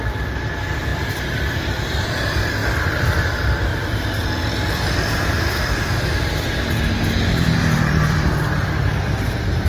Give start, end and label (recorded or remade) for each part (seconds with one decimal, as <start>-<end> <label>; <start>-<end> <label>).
0.0-3.7 remade; 3.7-4.7 recorded; 4.7-9.7 remade